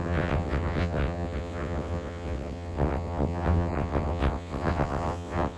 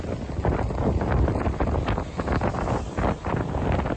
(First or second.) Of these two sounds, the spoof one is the first